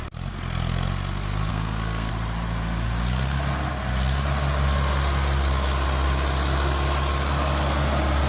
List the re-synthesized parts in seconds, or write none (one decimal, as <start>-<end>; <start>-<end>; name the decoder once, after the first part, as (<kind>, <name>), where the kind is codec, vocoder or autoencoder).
1.5-2.1 (codec, SNAC)